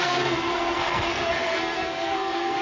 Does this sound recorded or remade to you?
remade